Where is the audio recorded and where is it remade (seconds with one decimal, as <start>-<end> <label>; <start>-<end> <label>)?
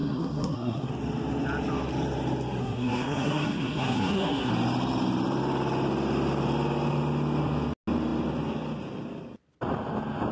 0.0-0.9 remade; 0.9-2.6 recorded; 2.6-4.5 remade; 4.5-10.3 recorded